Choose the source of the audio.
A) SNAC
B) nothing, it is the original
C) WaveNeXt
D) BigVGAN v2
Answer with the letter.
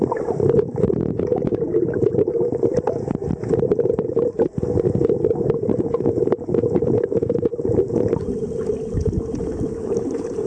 D